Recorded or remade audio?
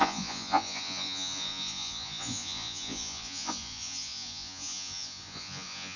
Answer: remade